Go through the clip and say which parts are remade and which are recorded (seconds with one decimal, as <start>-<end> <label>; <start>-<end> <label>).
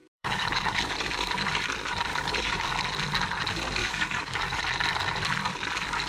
0.0-0.8 remade; 0.8-2.1 recorded; 2.1-2.7 remade; 2.7-3.8 recorded; 3.8-4.6 remade; 4.6-6.1 recorded